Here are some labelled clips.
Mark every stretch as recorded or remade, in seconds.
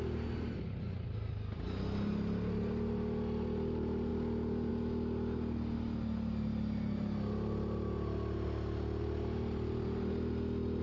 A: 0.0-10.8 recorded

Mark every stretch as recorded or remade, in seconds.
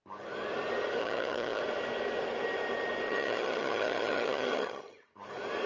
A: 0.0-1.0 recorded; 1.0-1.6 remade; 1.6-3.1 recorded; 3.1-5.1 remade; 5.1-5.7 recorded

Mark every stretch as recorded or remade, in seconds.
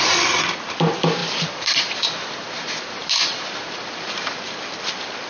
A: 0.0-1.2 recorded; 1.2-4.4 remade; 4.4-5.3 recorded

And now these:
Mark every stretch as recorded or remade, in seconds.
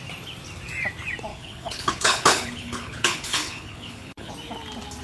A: 0.0-1.3 recorded; 1.3-4.3 remade; 4.3-5.0 recorded